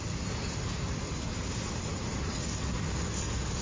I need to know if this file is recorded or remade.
recorded